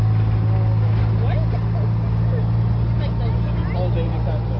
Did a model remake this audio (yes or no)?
no